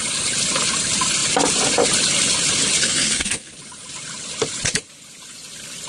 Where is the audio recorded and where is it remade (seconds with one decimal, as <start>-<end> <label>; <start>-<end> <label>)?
0.0-2.8 recorded; 2.8-3.5 remade; 3.5-5.9 recorded